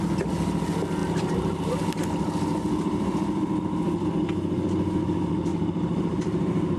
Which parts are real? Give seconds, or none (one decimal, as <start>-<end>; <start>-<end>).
0.0-1.0; 2.0-5.5